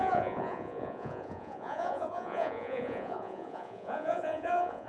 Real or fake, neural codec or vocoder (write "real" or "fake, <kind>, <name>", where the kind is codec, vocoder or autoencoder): fake, vocoder, Vocos